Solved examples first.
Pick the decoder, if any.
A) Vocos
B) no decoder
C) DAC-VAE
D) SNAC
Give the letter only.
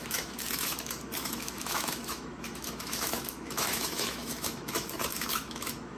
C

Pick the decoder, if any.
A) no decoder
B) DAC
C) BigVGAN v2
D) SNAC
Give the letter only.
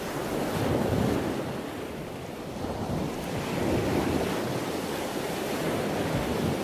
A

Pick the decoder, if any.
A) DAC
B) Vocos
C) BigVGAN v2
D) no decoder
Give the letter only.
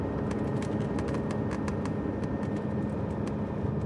D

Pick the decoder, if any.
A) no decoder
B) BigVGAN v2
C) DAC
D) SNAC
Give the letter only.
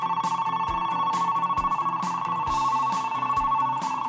B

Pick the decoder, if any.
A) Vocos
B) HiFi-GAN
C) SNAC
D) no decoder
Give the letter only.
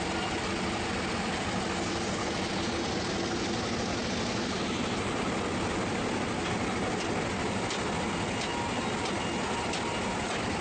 D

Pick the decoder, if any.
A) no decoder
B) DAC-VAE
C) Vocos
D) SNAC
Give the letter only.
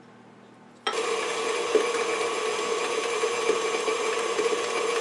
A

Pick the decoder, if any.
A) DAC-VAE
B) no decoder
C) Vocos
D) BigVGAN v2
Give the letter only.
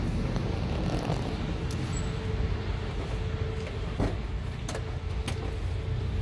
B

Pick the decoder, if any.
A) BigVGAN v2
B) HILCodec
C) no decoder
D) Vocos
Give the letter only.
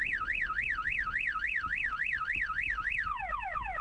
C